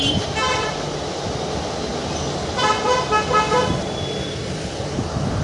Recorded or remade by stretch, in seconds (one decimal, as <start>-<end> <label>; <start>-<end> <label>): 0.0-5.4 recorded